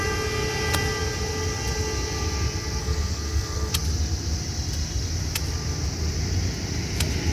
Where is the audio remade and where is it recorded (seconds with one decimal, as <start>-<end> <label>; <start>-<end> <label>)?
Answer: 0.0-2.8 recorded; 2.8-3.7 remade; 3.7-7.3 recorded